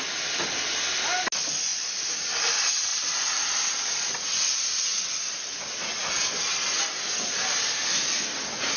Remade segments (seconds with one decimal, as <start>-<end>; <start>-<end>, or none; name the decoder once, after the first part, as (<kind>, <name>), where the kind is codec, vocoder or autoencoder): 1.7-2.4 (vocoder, BigVGAN v2); 2.9-4.1; 4.9-6.0